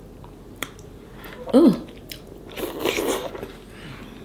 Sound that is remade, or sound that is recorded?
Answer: recorded